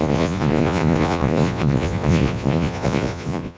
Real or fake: fake